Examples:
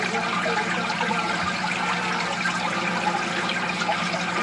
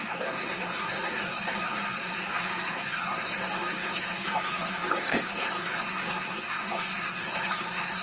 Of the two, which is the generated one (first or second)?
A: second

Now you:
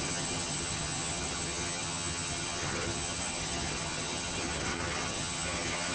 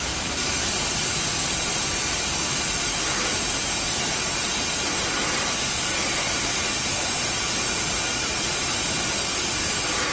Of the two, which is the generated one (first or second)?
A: first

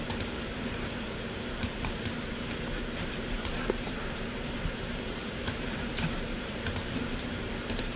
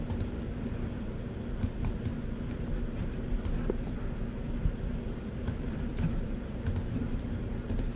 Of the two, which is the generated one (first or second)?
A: first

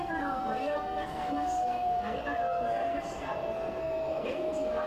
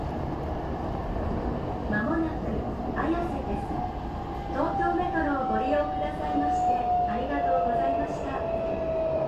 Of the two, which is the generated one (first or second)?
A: first